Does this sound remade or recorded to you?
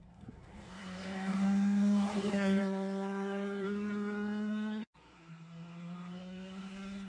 remade